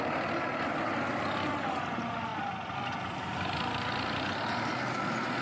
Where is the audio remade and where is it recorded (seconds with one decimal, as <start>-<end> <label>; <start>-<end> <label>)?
0.0-5.4 recorded